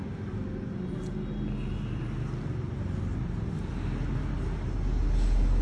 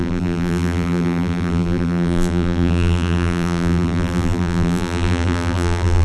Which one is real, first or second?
first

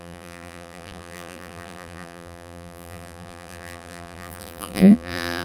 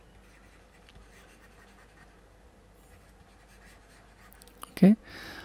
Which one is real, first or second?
second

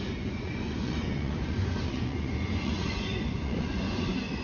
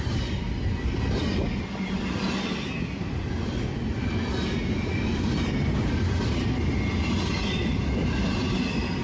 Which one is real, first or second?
second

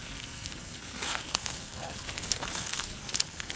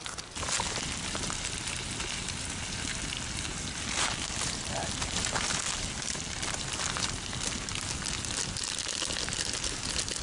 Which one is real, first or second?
second